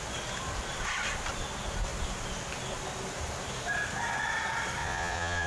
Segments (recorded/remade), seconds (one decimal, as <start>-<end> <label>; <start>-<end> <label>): 0.0-4.8 recorded; 4.8-5.5 remade